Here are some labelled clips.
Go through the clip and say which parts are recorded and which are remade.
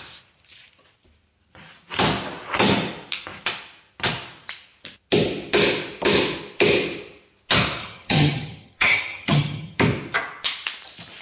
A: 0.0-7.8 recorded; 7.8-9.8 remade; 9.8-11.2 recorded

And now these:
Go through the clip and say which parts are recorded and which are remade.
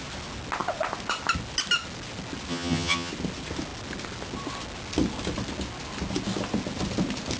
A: 0.0-2.5 recorded; 2.5-3.1 remade; 3.1-7.4 recorded